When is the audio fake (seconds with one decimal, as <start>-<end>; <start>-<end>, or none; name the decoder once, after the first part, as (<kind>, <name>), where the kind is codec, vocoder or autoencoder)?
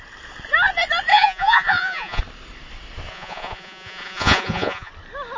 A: 1.1-2.2 (vocoder, Vocos); 3.1-4.9